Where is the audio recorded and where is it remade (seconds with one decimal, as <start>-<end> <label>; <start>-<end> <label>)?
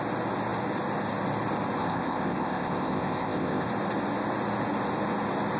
0.0-1.8 recorded; 1.8-3.7 remade; 3.7-5.6 recorded